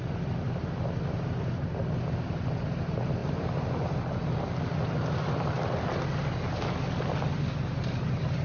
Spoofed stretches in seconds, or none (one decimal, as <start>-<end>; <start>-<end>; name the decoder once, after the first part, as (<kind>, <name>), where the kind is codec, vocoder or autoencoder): none

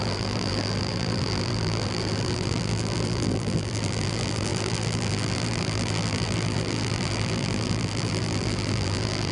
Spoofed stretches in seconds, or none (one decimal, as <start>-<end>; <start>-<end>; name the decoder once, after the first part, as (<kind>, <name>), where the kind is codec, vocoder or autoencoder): 0.0-9.3 (vocoder, BigVGAN v2)

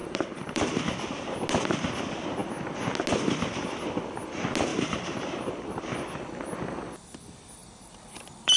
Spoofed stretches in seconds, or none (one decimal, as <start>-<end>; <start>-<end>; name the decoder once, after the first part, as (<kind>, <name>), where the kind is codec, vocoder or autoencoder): 0.0-0.8 (vocoder, BigVGAN v2); 4.7-5.9; 7.6-8.6

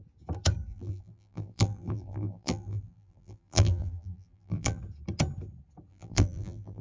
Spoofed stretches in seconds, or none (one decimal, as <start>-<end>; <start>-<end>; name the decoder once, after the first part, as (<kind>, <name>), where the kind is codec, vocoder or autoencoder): 0.7-4.8 (vocoder, BigVGAN v2); 5.9-6.8

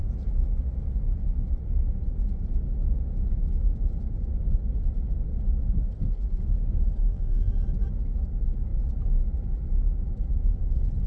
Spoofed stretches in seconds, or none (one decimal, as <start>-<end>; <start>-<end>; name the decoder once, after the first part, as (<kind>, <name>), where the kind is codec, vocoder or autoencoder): 7.0-7.5 (vocoder, BigVGAN v2)

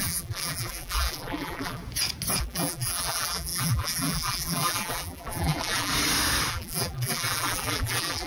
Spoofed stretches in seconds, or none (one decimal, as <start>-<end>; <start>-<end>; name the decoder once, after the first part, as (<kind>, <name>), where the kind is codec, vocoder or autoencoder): 0.0-1.8 (vocoder, BigVGAN v2); 2.4-5.9; 6.5-8.3

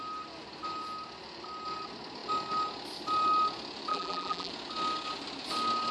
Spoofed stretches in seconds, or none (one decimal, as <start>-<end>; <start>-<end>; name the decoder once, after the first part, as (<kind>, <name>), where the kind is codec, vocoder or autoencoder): 3.9-4.5 (vocoder, BigVGAN v2)

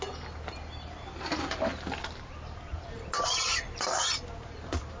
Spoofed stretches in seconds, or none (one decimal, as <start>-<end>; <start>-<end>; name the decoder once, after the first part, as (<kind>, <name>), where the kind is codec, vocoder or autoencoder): 3.5-4.2 (vocoder, BigVGAN v2)